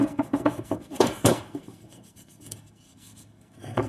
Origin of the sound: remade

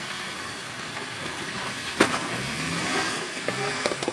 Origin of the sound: remade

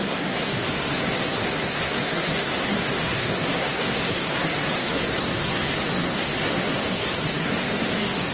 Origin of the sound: remade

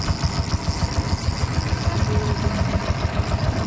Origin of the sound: recorded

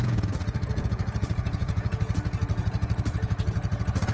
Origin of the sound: remade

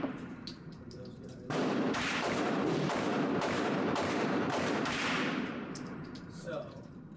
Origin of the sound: remade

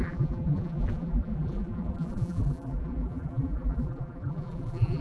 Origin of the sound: remade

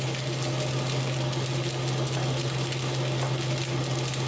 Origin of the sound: recorded